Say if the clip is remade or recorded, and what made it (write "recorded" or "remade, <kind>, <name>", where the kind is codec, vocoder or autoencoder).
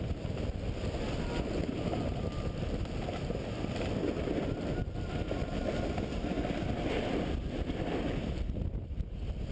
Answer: recorded